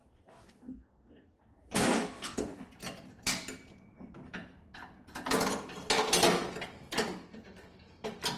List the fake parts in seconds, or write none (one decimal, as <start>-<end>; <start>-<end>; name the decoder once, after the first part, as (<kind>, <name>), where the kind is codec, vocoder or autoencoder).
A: 0.0-2.6 (codec, DAC)

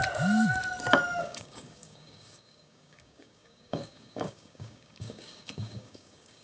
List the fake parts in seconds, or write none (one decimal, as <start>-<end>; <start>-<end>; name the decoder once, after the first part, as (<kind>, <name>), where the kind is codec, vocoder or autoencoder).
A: 1.2-6.4 (codec, DAC)

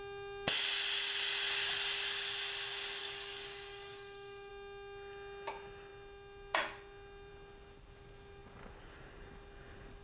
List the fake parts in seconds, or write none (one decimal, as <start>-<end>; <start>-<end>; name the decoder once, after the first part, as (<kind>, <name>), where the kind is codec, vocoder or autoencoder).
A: 3.0-4.5 (codec, DAC)

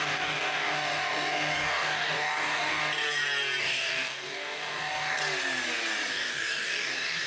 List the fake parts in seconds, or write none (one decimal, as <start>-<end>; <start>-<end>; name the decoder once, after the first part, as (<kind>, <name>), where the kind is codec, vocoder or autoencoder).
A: 0.0-2.8 (codec, DAC); 3.6-5.2; 6.1-7.3

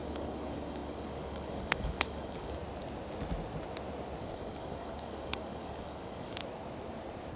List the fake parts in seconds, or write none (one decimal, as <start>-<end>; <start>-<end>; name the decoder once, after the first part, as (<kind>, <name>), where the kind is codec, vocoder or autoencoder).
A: 0.0-2.6 (codec, DAC); 4.2-6.4

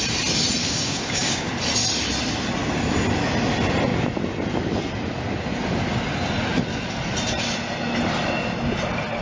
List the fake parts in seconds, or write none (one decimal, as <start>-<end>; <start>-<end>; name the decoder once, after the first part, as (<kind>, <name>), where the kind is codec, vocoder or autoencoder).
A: 0.6-1.5 (codec, DAC)